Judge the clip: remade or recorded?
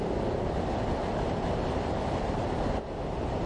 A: recorded